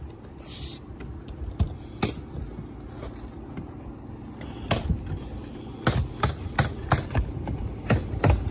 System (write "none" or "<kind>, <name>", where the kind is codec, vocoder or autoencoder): none